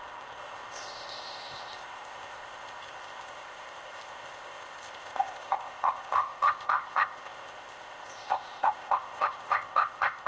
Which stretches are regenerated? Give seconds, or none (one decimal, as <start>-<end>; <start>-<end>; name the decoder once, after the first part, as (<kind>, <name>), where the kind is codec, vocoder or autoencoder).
0.0-10.3 (codec, ZipCodec)